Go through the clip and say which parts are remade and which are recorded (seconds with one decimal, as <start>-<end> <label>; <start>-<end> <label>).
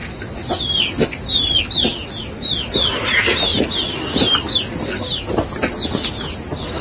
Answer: 0.0-6.8 recorded